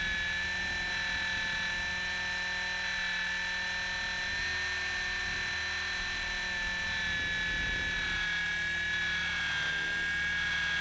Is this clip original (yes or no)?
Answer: yes